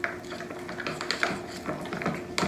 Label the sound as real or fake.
real